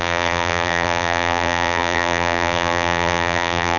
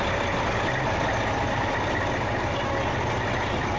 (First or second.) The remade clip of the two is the first